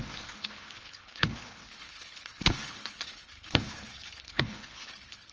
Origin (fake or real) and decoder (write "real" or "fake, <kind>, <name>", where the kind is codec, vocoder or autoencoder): fake, codec, HILCodec